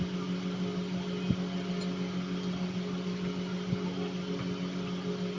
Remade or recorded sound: recorded